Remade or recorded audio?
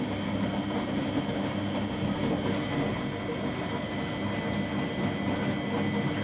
recorded